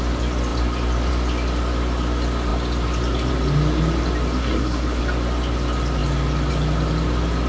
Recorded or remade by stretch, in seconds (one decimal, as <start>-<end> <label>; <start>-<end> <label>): 0.0-4.4 recorded; 4.4-5.0 remade; 5.0-7.5 recorded